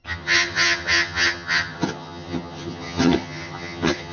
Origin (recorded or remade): remade